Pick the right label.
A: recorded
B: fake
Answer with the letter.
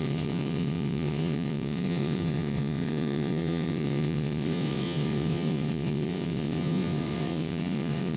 B